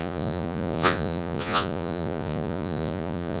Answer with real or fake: fake